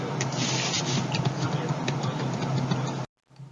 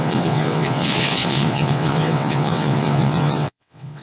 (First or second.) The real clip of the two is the first